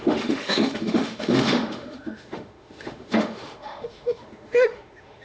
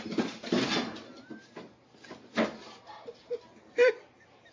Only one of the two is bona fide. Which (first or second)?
second